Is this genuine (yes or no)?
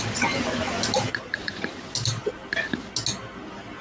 yes